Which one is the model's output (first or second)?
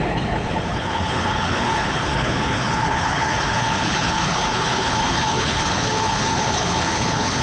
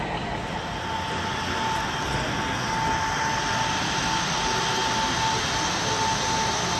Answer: first